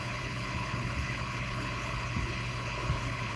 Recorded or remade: remade